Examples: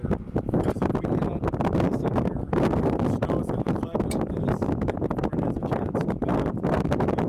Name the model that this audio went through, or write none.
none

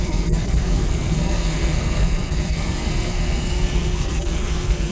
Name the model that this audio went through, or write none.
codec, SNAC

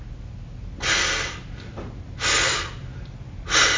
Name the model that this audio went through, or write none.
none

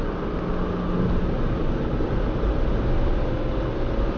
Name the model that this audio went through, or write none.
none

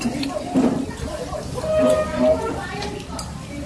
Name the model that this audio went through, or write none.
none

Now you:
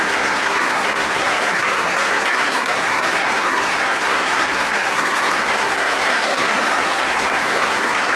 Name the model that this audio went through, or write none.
codec, SNAC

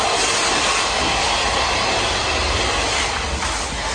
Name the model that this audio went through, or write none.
none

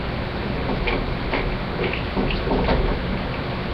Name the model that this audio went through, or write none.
none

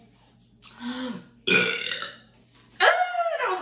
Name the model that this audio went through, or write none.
none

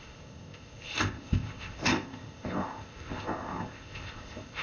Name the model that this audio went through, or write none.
codec, ZipCodec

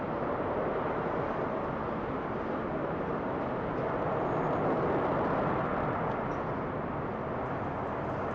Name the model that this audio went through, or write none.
none